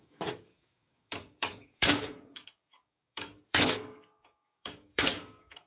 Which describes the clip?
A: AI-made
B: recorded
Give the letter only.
A